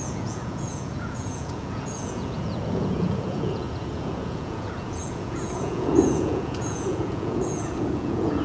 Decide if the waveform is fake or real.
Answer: fake